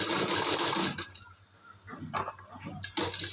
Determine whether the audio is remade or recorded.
recorded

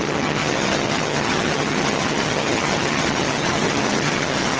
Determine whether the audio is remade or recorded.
remade